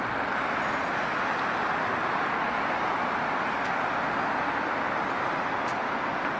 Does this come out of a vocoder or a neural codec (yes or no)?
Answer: no